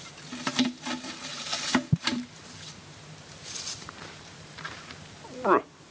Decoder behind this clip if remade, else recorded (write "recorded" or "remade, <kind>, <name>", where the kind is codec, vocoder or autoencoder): remade, vocoder, BigVGAN v2